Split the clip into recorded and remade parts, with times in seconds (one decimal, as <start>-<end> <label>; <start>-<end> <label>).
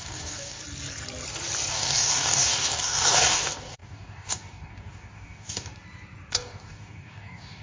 0.0-0.6 remade; 0.6-1.7 recorded; 1.7-5.7 remade; 5.7-6.3 recorded; 6.3-7.6 remade